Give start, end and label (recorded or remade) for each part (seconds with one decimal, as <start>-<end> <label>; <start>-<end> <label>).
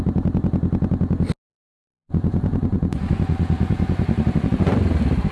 0.0-1.5 recorded; 1.5-4.7 remade; 4.7-5.3 recorded